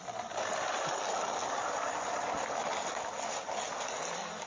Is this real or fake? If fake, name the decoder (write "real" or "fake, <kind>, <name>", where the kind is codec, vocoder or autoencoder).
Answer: real